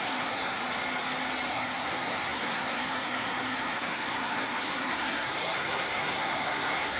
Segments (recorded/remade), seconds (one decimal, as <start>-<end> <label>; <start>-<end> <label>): 0.0-0.6 remade; 0.6-1.5 recorded; 1.5-7.0 remade